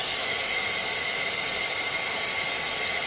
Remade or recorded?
recorded